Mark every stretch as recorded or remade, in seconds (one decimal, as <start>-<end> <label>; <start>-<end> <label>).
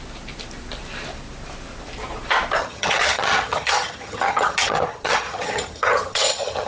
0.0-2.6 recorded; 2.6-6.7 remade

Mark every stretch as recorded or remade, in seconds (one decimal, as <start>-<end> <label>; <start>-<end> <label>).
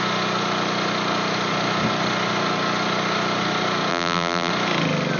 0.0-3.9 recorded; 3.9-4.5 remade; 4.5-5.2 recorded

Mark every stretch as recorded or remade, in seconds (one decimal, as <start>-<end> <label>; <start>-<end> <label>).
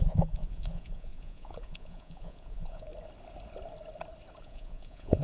0.0-2.9 remade; 2.9-4.4 recorded; 4.4-5.2 remade